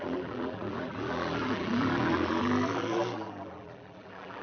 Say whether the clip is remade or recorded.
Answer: remade